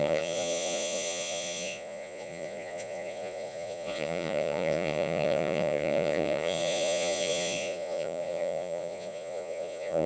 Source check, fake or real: fake